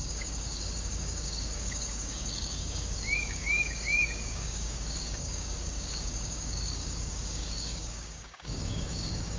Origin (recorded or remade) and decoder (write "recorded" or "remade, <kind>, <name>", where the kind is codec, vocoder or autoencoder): remade, codec, DAC